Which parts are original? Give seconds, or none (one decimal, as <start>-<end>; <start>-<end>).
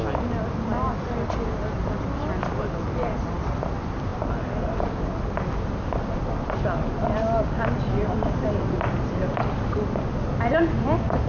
0.0-11.3